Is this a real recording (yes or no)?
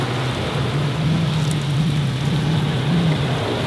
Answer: yes